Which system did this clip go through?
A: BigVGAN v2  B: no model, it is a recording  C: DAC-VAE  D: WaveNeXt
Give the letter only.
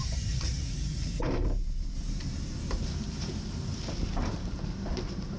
A